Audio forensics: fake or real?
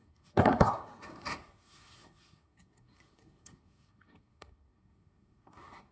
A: fake